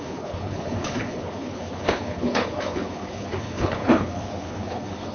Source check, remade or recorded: remade